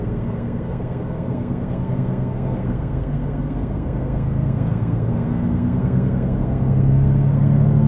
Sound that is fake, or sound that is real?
fake